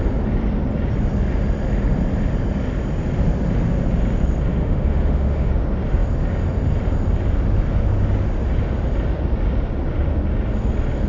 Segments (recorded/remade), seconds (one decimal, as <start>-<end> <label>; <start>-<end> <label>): 0.0-4.5 recorded; 4.5-5.5 remade; 5.5-11.1 recorded